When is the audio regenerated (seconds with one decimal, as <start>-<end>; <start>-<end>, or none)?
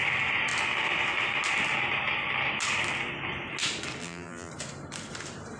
4.0-4.5